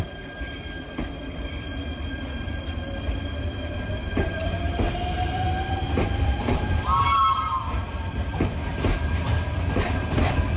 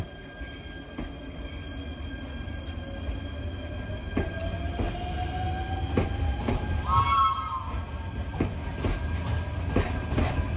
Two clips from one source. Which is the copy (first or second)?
first